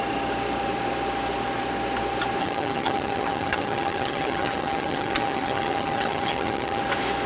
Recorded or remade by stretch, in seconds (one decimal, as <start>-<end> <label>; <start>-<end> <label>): 0.0-2.4 recorded; 2.4-6.8 remade; 6.8-7.3 recorded